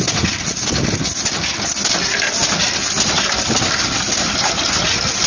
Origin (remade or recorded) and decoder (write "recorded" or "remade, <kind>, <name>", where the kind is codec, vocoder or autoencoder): recorded